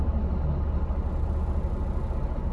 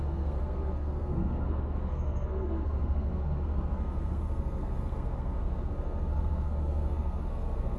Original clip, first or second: first